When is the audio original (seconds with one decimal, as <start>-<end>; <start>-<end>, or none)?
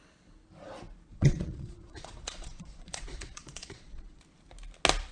0.0-1.1; 4.2-5.1